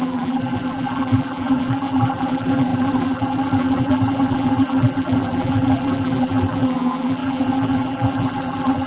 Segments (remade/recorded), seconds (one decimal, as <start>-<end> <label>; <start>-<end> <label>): 0.0-8.9 remade